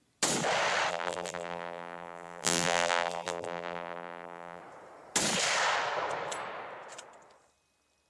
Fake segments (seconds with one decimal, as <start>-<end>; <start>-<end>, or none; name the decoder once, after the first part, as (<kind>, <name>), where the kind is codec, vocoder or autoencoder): 0.9-4.6 (vocoder, BigVGAN v2)